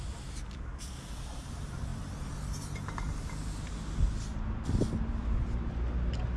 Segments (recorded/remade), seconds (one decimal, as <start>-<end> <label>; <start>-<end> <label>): 0.0-6.4 recorded